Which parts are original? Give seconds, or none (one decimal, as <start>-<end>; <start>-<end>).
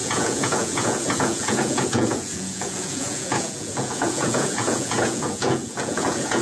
none